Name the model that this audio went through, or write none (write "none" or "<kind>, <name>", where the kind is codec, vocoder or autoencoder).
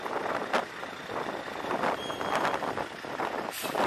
vocoder, BigVGAN v2